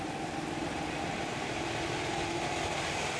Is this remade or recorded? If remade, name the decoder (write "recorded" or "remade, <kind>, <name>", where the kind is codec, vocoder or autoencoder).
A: recorded